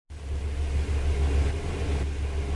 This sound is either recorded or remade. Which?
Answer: recorded